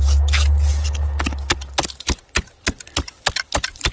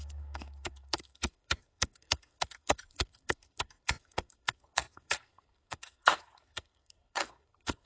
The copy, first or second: second